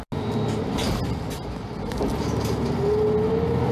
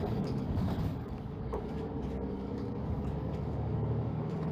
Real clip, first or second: first